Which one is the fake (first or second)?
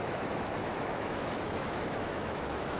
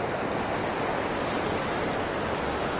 first